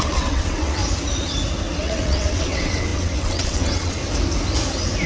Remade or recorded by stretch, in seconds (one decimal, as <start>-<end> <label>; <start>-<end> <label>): 0.0-0.8 remade; 0.8-1.8 recorded; 1.8-4.0 remade; 4.0-5.1 recorded

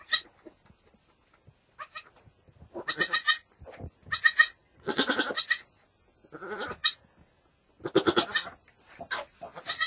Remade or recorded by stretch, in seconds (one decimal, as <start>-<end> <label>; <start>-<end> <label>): 0.0-4.6 recorded; 4.6-5.2 remade; 5.2-9.9 recorded

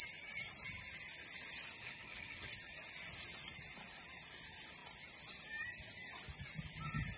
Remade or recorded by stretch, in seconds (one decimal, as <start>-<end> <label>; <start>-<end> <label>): 0.0-1.8 recorded; 1.8-2.5 remade; 2.5-7.2 recorded

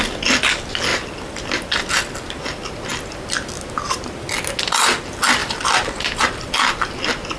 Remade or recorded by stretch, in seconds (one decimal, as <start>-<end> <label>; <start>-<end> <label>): 0.0-7.4 recorded

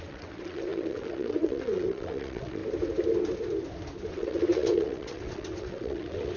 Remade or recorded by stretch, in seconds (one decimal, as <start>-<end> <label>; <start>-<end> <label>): 0.0-2.6 remade; 2.6-4.1 recorded; 4.1-6.4 remade

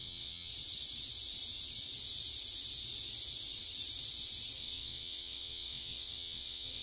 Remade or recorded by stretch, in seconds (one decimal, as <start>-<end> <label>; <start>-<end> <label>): 0.0-0.5 remade; 0.5-4.6 recorded; 4.6-6.8 remade

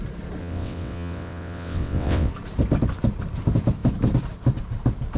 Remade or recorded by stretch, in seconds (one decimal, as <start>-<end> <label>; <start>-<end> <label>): 0.0-0.4 recorded; 0.4-2.3 remade; 2.3-5.2 recorded

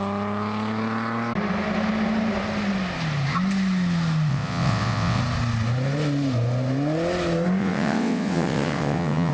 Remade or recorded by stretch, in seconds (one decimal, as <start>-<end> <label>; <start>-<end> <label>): 0.0-4.3 recorded; 4.3-5.2 remade; 5.2-7.6 recorded; 7.6-9.3 remade